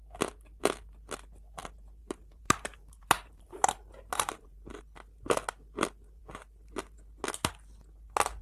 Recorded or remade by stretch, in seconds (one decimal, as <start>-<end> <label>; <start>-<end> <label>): 0.0-2.0 recorded; 2.0-4.8 remade; 4.8-8.4 recorded